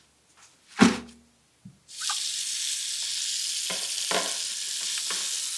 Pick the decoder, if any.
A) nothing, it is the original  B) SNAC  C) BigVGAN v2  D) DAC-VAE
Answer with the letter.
A